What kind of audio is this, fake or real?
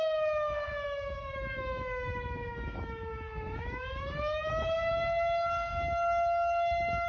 fake